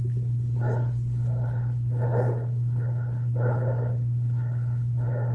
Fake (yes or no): yes